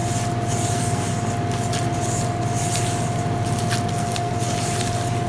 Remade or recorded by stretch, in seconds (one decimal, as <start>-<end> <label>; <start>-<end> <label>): 0.0-0.7 recorded; 0.7-1.1 remade; 1.1-3.9 recorded; 3.9-4.3 remade; 4.3-5.3 recorded

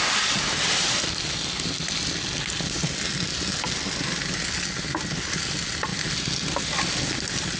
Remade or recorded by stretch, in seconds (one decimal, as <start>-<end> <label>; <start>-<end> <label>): 0.0-7.6 recorded

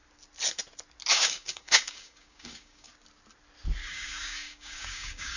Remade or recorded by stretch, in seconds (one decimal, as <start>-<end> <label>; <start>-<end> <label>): 0.0-1.1 recorded; 1.1-2.9 remade; 2.9-3.8 recorded; 3.8-5.4 remade

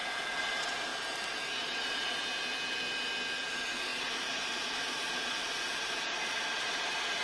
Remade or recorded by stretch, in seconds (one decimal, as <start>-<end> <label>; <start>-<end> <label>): 0.0-0.9 remade; 0.9-1.6 recorded; 1.6-2.2 remade; 2.2-3.5 recorded; 3.5-7.2 remade

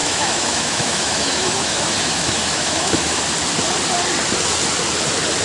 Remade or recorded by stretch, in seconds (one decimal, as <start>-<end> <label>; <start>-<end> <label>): 0.0-3.2 remade; 3.2-5.4 recorded

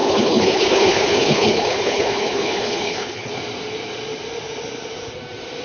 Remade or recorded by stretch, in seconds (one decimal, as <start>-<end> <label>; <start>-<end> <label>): 0.0-3.3 remade; 3.3-5.6 recorded